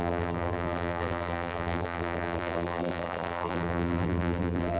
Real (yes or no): no